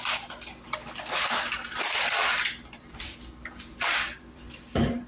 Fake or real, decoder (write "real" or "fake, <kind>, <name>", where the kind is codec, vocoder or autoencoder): fake, vocoder, BigVGAN v2